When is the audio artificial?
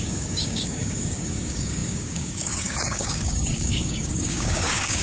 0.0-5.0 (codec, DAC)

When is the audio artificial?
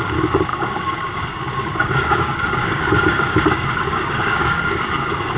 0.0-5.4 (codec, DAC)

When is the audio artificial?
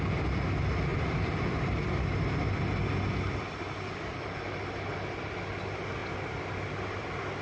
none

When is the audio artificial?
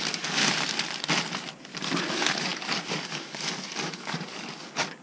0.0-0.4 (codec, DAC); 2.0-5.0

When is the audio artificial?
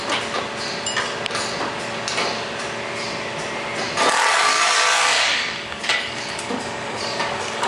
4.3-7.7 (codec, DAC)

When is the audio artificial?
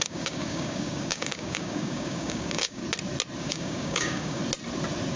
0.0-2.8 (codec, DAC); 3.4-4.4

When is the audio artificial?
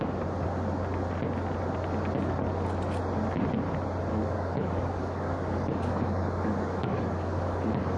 4.1-8.0 (codec, DAC)